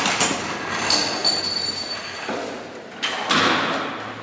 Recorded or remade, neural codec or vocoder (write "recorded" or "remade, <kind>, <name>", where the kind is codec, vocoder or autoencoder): recorded